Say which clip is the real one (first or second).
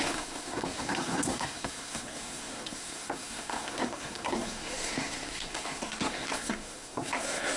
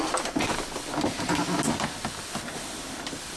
second